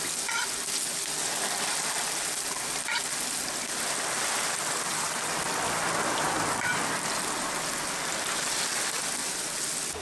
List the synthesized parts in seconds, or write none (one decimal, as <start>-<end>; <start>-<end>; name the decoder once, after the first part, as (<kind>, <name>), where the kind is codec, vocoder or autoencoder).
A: none